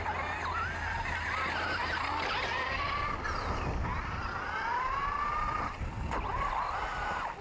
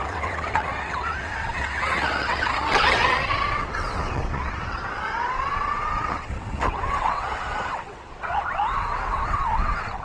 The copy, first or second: second